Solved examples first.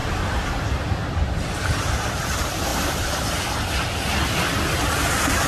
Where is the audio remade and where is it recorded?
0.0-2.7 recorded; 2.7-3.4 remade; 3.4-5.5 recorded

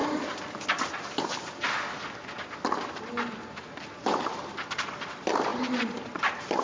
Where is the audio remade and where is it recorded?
0.0-4.0 recorded; 4.0-6.6 remade

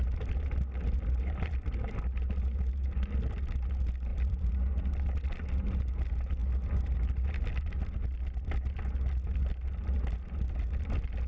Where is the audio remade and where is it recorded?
0.0-4.1 recorded; 4.1-4.8 remade; 4.8-11.3 recorded

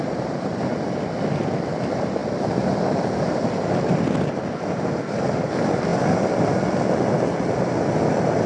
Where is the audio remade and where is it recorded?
0.0-8.5 recorded